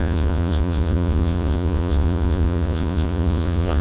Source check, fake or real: fake